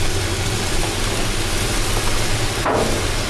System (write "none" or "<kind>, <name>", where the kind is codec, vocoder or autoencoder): none